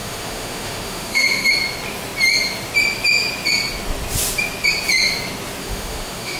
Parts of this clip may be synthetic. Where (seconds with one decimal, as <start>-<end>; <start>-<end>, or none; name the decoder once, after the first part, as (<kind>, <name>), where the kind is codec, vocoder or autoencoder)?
0.0-1.5 (autoencoder, DAC-VAE); 5.6-6.4